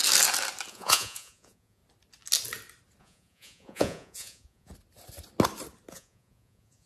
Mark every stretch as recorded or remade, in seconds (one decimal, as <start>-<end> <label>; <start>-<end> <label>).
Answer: 0.0-0.7 recorded; 0.7-1.8 remade; 1.8-3.0 recorded; 3.0-4.7 remade; 4.7-5.9 recorded; 5.9-6.9 remade

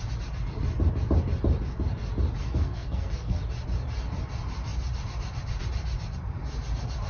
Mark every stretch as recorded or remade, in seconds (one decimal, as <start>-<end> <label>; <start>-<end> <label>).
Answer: 0.0-2.4 recorded; 2.4-3.4 remade; 3.4-7.1 recorded